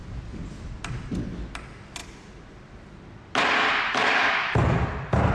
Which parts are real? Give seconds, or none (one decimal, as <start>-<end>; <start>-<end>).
0.0-5.3